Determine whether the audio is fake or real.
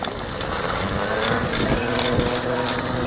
real